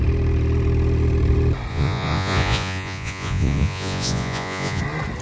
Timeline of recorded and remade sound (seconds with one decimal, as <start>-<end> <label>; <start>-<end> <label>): 0.0-1.7 recorded; 1.7-4.8 remade; 4.8-5.2 recorded